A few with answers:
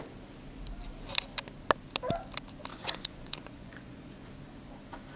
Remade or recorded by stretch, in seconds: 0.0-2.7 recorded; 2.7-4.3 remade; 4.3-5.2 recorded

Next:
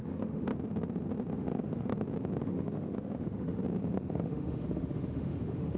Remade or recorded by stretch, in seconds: 0.0-0.5 remade; 0.5-1.3 recorded; 1.3-1.9 remade; 1.9-2.4 recorded; 2.4-3.6 remade; 3.6-4.1 recorded; 4.1-5.8 remade

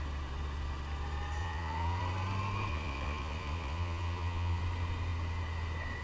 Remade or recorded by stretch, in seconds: 0.0-1.4 recorded; 1.4-2.0 remade; 2.0-2.7 recorded; 2.7-4.6 remade; 4.6-6.0 recorded

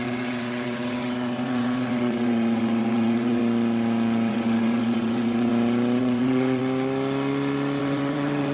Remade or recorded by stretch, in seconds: 0.0-3.4 remade; 3.4-4.3 recorded; 4.3-5.5 remade; 5.5-6.0 recorded; 6.0-6.6 remade; 6.6-7.8 recorded; 7.8-8.5 remade